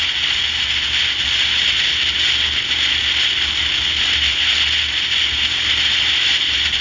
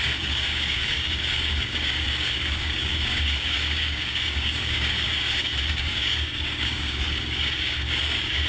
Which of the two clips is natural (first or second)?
first